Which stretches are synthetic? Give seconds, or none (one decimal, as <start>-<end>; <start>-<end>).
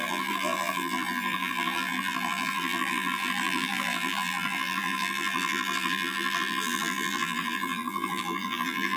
0.0-9.0